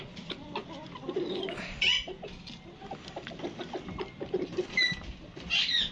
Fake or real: real